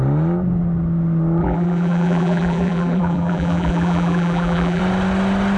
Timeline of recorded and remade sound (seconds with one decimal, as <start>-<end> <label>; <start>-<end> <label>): 0.0-1.4 recorded; 1.4-4.8 remade; 4.8-5.6 recorded